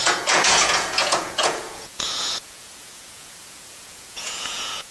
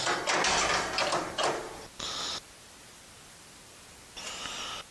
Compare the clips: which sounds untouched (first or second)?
second